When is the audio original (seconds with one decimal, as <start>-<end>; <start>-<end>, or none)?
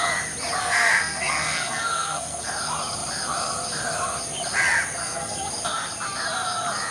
0.0-0.6; 2.5-5.0; 5.5-6.9